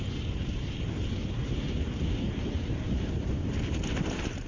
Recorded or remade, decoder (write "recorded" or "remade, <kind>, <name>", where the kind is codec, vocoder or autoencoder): remade, vocoder, BigVGAN v2